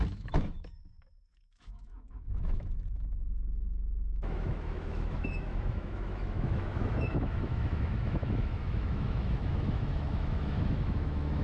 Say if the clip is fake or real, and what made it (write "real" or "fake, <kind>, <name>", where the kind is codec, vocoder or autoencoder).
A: fake, autoencoder, DAC-VAE